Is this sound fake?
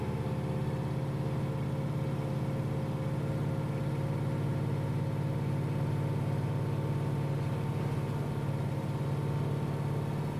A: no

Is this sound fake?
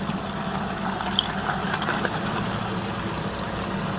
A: no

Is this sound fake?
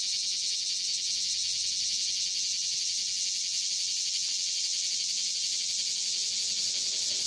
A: no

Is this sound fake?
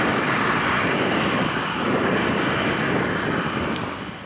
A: no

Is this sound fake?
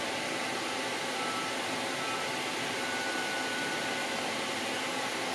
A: no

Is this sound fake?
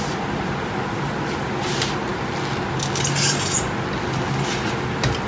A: no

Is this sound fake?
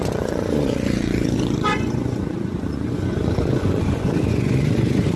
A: yes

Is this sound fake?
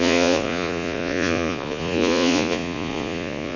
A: yes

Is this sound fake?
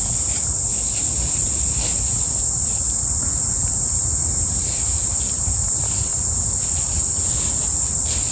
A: no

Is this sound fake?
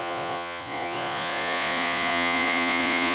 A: yes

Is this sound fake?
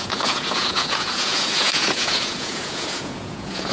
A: yes